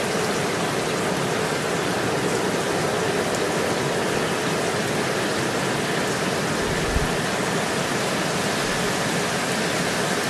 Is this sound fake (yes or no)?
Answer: no